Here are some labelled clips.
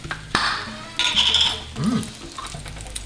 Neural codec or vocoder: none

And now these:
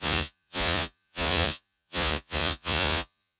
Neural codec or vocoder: vocoder, Vocos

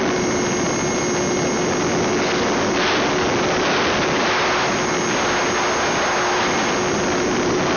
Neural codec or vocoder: none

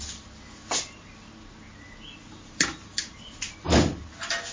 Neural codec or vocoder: none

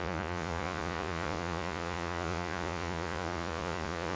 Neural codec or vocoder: vocoder, Vocos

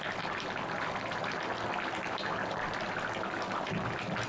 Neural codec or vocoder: none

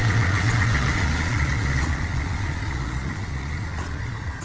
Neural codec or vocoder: vocoder, Vocos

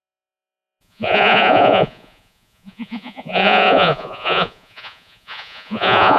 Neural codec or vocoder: vocoder, Vocos